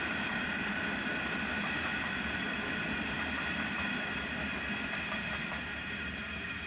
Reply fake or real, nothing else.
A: real